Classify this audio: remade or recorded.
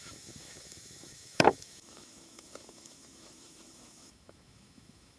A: remade